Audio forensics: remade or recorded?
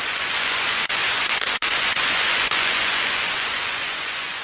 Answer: remade